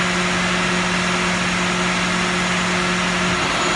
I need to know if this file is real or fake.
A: real